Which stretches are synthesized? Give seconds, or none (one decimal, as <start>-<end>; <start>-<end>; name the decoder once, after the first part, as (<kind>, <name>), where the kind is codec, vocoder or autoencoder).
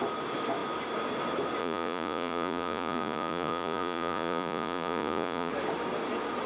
1.6-5.5 (vocoder, Vocos)